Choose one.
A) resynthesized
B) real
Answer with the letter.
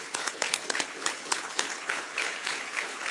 A